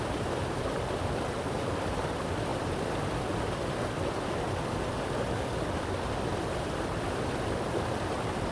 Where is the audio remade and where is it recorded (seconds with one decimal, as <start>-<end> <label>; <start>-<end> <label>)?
0.0-2.5 remade; 2.5-6.6 recorded; 6.6-8.5 remade